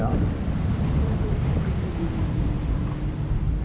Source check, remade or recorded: remade